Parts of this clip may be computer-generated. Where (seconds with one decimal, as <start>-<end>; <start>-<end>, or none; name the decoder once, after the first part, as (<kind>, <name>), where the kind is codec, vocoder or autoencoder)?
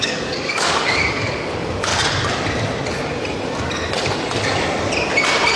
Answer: 0.0-1.9 (codec, DAC)